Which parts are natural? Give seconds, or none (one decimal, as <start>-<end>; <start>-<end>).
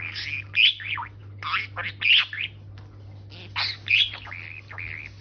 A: 0.0-5.2